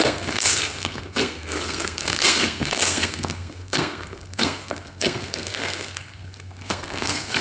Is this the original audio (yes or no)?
no